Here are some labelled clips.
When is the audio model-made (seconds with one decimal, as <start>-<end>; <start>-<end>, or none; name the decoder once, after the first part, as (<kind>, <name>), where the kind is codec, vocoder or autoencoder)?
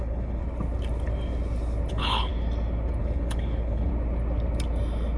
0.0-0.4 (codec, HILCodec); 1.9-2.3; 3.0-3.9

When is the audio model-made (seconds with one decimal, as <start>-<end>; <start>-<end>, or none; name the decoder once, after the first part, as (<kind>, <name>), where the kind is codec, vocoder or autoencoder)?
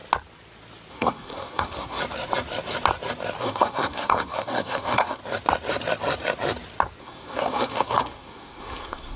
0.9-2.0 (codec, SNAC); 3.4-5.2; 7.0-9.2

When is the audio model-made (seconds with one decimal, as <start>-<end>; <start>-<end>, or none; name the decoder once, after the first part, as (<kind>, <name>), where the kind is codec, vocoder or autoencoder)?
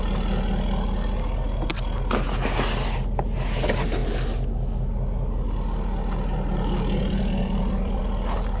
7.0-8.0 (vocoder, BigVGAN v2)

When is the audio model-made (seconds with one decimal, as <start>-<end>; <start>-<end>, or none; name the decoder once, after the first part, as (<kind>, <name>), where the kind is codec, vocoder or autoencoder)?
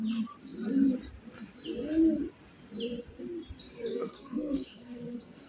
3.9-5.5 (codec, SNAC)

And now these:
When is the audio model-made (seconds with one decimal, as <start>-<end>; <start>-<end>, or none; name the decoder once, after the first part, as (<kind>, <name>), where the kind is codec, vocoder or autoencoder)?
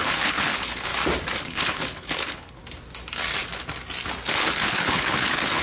0.0-0.9 (codec, HILCodec); 1.4-2.6; 4.3-5.6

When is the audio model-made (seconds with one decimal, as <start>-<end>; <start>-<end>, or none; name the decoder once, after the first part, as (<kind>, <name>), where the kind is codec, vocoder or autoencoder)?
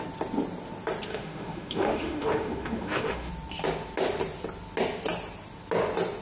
1.1-3.3 (autoencoder, DAC-VAE)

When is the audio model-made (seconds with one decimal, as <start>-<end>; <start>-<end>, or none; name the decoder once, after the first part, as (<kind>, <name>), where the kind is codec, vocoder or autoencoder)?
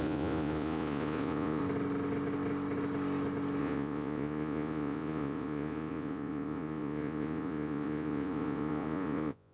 0.0-1.6 (vocoder, Vocos); 3.6-9.5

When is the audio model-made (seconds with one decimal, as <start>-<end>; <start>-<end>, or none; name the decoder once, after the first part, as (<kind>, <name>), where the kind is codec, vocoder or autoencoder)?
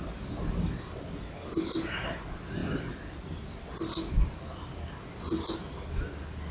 none